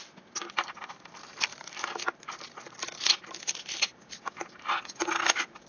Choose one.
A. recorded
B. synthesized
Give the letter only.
A